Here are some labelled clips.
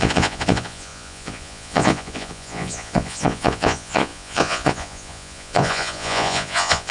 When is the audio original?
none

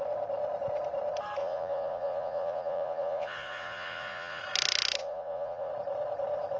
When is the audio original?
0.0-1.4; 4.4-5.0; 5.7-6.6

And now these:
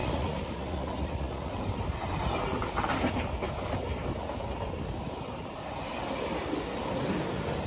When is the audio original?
1.5-7.7

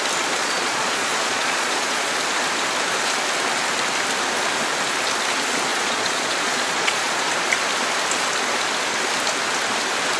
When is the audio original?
0.0-0.4; 2.1-5.7; 7.3-10.2